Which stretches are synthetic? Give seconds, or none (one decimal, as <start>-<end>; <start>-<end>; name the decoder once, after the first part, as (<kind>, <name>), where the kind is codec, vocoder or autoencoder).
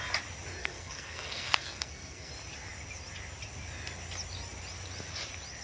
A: 0.6-2.3 (codec, SNAC)